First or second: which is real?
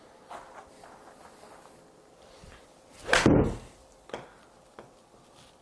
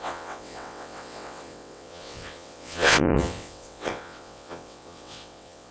first